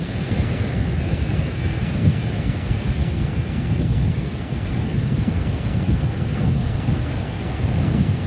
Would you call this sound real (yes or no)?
no